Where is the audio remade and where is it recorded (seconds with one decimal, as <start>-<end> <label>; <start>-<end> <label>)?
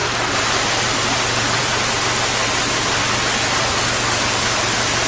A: 0.0-5.1 recorded